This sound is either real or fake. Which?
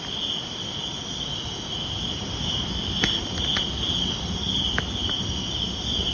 real